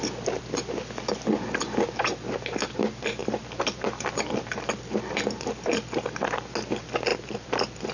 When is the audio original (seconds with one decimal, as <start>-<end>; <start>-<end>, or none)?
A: 0.0-3.2; 4.4-7.1